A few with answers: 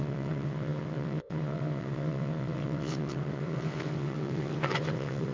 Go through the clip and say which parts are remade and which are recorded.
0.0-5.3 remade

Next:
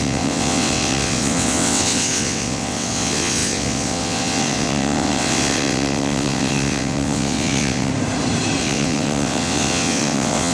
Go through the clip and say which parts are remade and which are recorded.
0.0-7.9 remade; 7.9-8.6 recorded; 8.6-10.5 remade

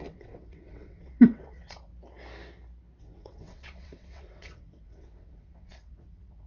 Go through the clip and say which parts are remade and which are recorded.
0.0-1.9 remade; 1.9-3.0 recorded; 3.0-6.5 remade

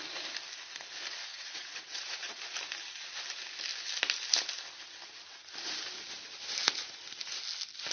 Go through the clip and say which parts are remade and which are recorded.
0.0-1.3 recorded; 1.3-2.4 remade; 2.4-7.9 recorded

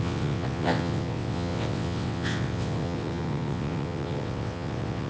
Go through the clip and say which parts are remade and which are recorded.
0.0-5.1 remade

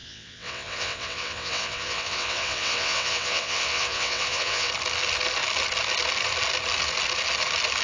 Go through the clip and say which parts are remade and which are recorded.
0.0-4.7 remade; 4.7-7.8 recorded